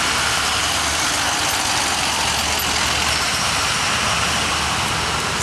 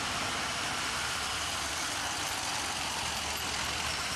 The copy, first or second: second